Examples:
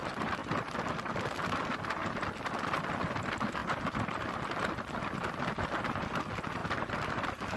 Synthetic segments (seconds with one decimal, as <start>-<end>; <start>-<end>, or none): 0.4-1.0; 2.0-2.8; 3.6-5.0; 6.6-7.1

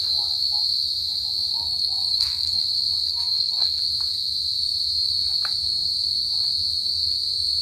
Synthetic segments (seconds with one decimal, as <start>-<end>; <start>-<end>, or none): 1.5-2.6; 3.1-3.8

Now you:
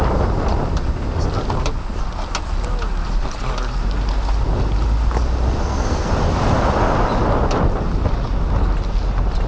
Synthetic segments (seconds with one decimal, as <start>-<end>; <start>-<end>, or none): 5.6-6.1

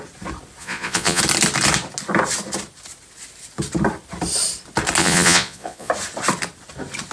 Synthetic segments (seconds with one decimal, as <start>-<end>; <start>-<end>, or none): 0.6-1.2; 5.0-5.9